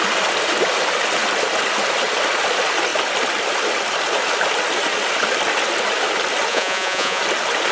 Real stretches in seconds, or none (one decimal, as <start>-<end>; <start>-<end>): 0.0-6.5; 7.2-7.7